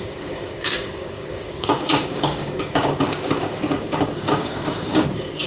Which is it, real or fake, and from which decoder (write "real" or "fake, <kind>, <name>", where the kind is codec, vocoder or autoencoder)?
fake, codec, DAC